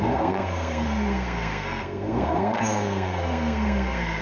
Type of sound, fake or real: fake